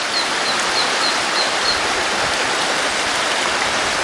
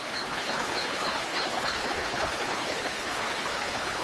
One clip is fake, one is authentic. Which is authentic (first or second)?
first